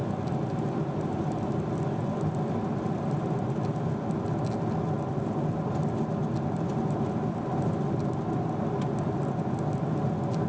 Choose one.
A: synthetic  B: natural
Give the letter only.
B